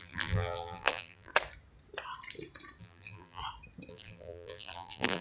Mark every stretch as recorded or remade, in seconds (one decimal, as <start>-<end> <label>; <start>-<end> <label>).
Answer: 0.0-1.3 remade; 1.3-2.8 recorded; 2.8-3.4 remade; 3.4-3.9 recorded; 3.9-5.2 remade

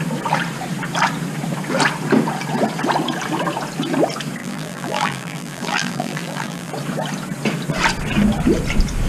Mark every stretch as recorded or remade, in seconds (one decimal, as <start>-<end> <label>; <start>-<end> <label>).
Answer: 0.0-4.4 recorded; 4.4-6.7 remade; 6.7-9.1 recorded